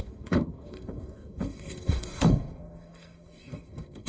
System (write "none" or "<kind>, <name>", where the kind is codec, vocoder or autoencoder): codec, SNAC